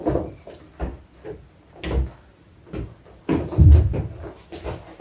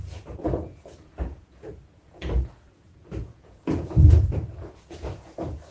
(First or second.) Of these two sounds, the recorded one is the first